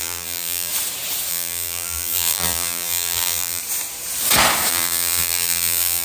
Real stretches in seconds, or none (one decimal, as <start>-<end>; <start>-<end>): 0.7-1.3; 3.6-4.7